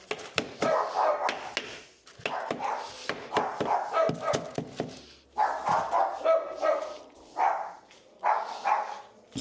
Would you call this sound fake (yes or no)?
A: no